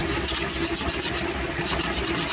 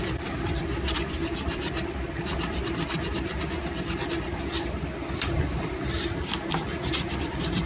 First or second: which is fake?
second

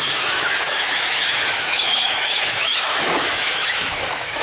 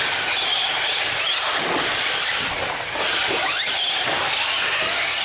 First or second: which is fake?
first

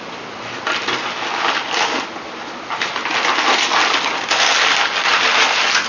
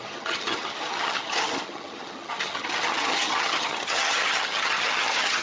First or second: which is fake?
second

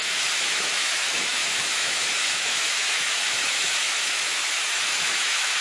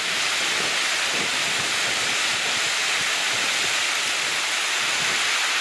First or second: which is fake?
first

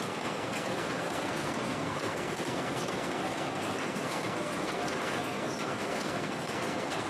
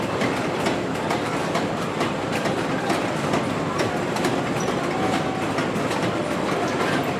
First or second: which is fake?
first